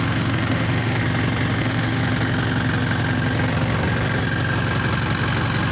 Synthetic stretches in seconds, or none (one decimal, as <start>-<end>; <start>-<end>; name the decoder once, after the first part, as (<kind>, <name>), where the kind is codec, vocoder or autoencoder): 0.0-1.0 (autoencoder, DAC-VAE); 1.6-2.0